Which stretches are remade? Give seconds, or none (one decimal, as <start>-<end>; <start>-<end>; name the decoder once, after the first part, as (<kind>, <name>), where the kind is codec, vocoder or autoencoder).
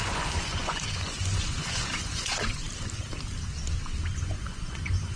0.0-2.6 (vocoder, Vocos); 4.1-5.2